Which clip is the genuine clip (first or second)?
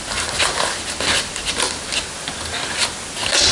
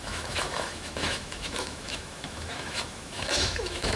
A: first